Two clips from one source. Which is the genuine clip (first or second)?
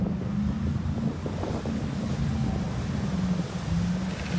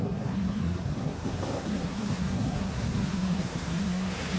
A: first